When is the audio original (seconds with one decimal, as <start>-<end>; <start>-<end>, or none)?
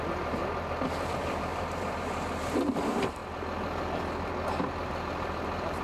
0.4-1.1; 3.2-4.7